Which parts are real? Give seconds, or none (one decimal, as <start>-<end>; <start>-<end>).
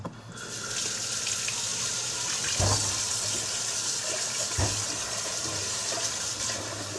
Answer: 0.0-7.0